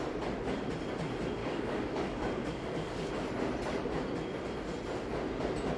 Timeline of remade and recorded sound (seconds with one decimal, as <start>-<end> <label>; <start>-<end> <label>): 0.0-1.4 recorded; 1.4-3.1 remade; 3.1-5.8 recorded